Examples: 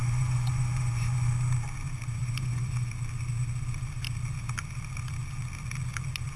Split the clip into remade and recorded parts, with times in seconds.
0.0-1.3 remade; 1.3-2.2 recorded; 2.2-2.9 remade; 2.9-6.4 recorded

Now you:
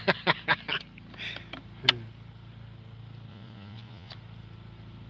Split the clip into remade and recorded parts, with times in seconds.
0.0-3.3 recorded; 3.3-4.1 remade; 4.1-5.1 recorded